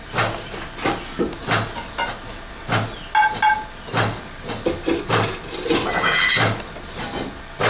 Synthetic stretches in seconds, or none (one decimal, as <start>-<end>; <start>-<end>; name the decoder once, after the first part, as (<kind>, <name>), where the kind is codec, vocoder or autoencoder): none